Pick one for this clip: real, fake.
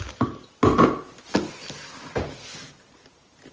real